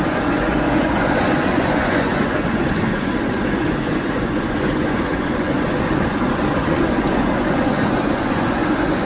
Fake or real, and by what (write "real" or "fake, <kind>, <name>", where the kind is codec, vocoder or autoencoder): fake, vocoder, Vocos